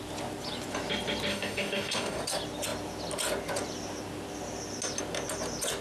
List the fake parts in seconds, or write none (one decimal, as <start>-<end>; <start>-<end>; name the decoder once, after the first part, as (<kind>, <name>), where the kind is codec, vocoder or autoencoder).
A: 1.3-2.2 (codec, DAC)